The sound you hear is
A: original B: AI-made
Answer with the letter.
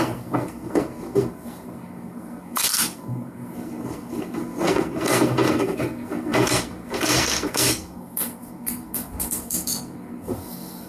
B